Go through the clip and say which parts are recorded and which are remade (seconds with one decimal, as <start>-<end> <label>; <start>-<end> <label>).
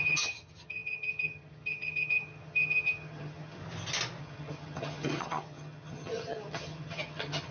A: 0.0-3.6 remade; 3.6-4.2 recorded; 4.2-7.5 remade